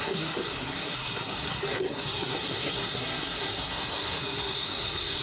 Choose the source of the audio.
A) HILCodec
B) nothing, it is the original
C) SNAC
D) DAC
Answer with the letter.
C